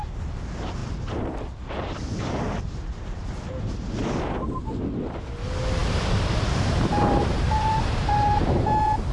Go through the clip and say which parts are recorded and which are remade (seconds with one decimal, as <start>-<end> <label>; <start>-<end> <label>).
0.0-5.8 recorded; 5.8-8.6 remade; 8.6-9.1 recorded